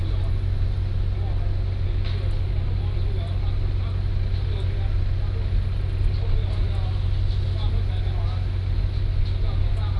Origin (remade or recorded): recorded